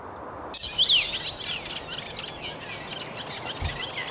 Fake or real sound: real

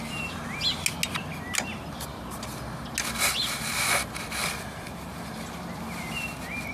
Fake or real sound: real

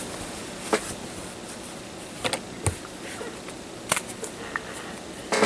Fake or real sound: real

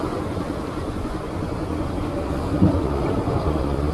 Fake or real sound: fake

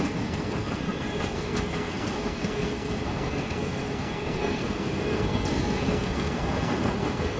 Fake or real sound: fake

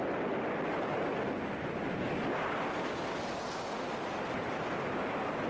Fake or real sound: real